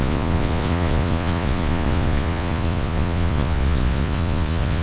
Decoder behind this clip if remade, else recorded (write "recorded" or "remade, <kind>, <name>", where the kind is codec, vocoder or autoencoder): remade, vocoder, Vocos